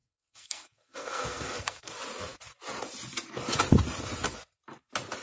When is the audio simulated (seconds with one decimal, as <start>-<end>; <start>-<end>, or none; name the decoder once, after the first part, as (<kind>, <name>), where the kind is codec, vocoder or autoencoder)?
0.0-1.9 (codec, SNAC)